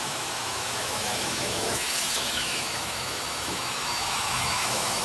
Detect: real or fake fake